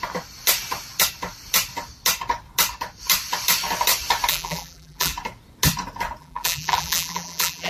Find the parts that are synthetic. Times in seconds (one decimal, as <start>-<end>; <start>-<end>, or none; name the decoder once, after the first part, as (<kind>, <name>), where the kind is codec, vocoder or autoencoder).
4.3-5.1 (vocoder, BigVGAN v2); 6.2-7.7